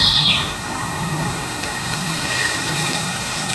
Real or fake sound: fake